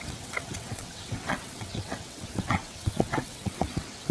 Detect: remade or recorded remade